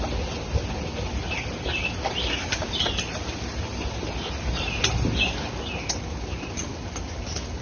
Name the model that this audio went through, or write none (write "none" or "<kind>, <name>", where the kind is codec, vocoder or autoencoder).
none